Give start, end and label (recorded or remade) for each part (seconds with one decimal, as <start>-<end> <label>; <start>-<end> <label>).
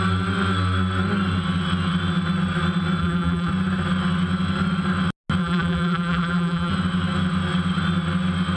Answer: 0.0-3.0 recorded; 3.0-3.5 remade; 3.5-5.4 recorded; 5.4-6.7 remade; 6.7-8.6 recorded